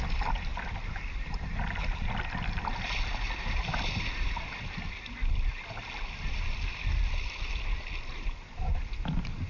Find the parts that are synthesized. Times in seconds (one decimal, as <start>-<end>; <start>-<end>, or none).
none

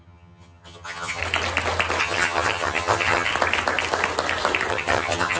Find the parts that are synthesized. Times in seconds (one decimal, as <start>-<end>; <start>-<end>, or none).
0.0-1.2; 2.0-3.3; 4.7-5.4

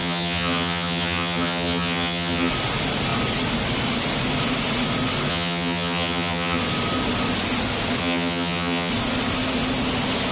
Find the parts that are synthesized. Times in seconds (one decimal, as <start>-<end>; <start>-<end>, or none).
0.0-2.5; 5.3-6.6; 8.0-8.9